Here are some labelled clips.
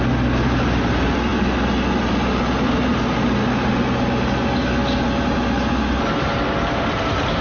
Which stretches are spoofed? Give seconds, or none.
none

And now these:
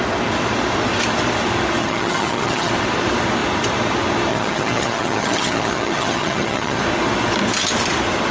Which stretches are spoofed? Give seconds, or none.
1.8-2.7 (vocoder, HiFi-GAN); 4.3-6.8

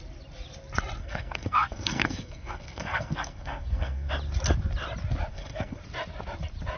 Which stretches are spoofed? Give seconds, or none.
1.0-4.1 (codec, SNAC); 5.3-5.8

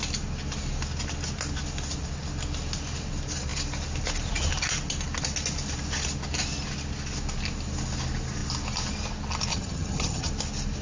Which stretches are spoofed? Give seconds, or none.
9.5-10.3 (vocoder, HiFi-GAN)

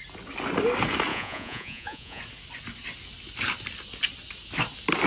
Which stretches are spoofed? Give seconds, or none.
1.1-2.2 (vocoder, Vocos)

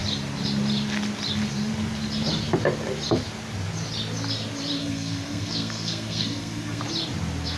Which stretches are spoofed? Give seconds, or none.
4.8-6.8 (codec, SNAC)

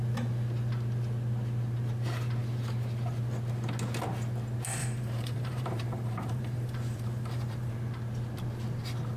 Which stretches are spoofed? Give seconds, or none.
4.8-7.7 (vocoder, BigVGAN v2)